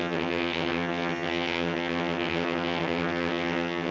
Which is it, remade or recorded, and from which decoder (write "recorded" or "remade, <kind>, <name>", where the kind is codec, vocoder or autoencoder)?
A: remade, vocoder, HiFi-GAN